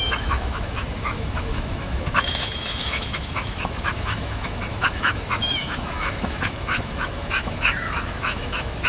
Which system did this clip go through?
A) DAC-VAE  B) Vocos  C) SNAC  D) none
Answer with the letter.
A